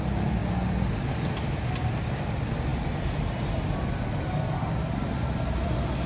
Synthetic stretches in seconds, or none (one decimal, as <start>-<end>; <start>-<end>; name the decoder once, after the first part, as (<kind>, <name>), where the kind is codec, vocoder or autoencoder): none